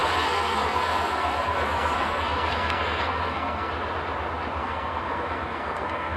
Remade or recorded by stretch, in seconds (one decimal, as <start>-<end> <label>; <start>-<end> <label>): 0.0-3.7 remade; 3.7-4.6 recorded; 4.6-6.2 remade

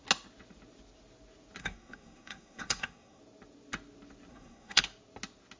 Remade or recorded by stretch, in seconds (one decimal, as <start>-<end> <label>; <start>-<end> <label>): 0.0-1.6 recorded; 1.6-3.2 remade; 3.2-4.3 recorded; 4.3-4.8 remade; 4.8-5.6 recorded